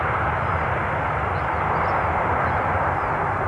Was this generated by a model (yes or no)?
no